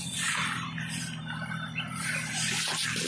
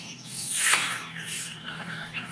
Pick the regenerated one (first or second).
second